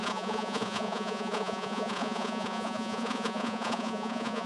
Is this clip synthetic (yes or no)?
yes